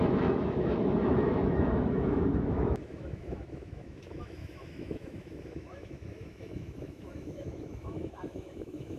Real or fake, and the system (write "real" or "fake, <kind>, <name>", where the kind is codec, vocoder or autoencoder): fake, autoencoder, DAC-VAE